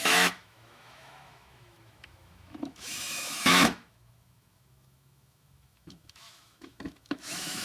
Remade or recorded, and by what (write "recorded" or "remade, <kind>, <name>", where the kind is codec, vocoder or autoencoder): remade, autoencoder, DAC-VAE